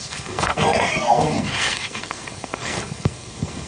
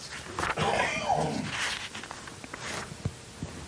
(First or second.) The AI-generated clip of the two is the first